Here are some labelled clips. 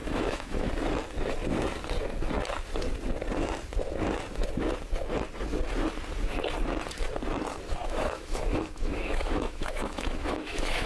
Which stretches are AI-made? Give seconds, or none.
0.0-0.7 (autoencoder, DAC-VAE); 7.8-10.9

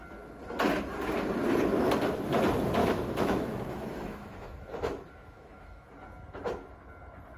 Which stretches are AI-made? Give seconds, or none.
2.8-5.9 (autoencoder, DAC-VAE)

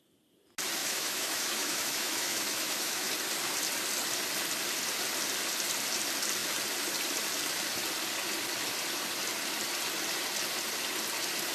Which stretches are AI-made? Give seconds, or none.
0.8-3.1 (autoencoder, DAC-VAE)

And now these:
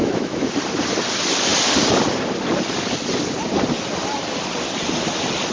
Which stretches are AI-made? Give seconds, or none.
0.0-0.5 (autoencoder, DAC-VAE)

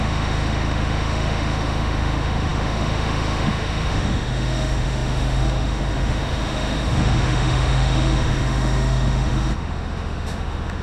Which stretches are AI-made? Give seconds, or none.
0.0-10.8 (autoencoder, DAC-VAE)

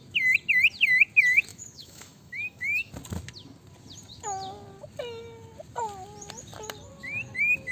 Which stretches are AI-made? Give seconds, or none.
1.5-2.9 (autoencoder, DAC-VAE)